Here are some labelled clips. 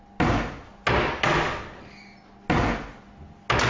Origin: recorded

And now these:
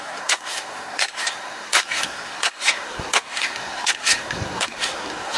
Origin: remade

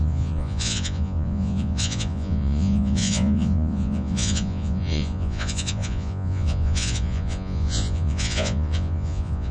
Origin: remade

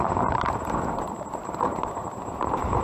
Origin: remade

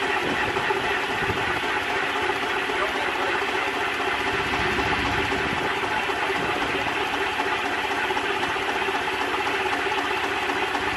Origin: recorded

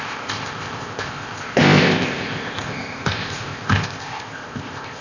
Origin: remade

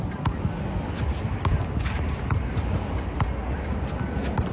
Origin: recorded